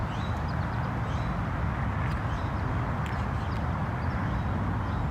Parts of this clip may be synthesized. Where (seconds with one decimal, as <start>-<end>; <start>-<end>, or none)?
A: none